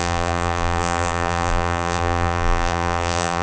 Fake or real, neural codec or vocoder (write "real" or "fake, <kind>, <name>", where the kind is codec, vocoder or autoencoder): fake, vocoder, BigVGAN v2